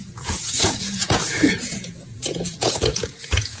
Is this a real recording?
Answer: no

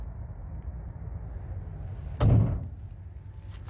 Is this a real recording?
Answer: yes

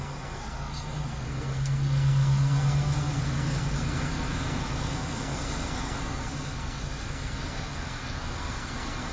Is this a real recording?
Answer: no